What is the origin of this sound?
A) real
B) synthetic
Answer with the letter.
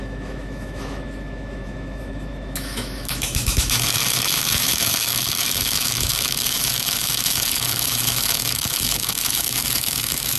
B